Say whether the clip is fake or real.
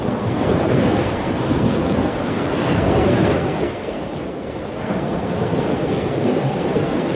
fake